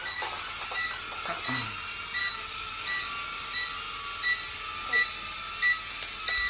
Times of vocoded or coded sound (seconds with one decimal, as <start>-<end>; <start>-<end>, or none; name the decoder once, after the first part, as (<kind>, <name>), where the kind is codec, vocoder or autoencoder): 2.2-3.1 (codec, DAC)